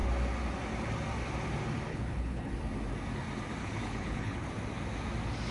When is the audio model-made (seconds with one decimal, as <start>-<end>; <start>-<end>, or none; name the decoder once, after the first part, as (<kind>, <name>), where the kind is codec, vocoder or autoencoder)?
1.9-2.5 (codec, HILCodec); 3.6-4.5